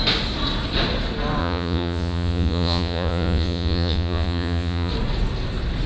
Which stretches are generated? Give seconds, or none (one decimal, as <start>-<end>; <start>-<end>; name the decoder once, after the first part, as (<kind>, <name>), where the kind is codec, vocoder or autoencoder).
1.4-4.9 (vocoder, Vocos)